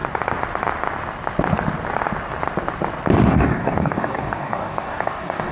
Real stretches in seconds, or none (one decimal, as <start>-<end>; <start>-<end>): 0.0-3.3